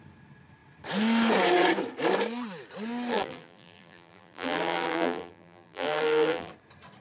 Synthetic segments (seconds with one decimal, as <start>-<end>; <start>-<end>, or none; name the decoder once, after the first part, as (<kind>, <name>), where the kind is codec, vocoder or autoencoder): 3.1-6.5 (vocoder, BigVGAN v2)